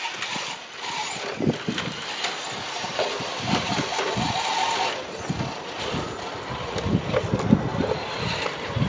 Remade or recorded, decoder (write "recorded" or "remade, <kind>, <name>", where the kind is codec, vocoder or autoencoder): recorded